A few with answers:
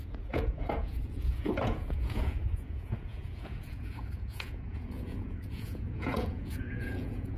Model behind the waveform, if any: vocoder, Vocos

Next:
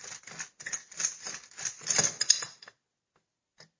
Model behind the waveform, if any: none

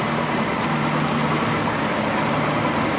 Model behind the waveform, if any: none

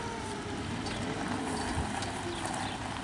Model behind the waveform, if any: none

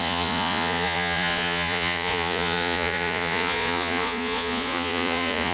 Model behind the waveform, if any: vocoder, Vocos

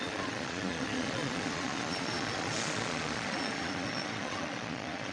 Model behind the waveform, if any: vocoder, Vocos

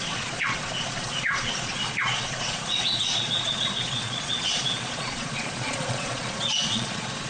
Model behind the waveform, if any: vocoder, Vocos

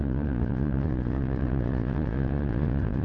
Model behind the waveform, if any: vocoder, Vocos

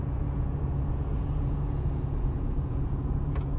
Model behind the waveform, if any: vocoder, Vocos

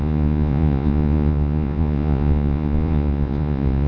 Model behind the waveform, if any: vocoder, Vocos